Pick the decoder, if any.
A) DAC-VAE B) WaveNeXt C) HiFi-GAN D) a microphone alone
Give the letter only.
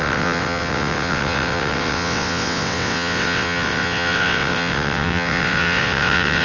B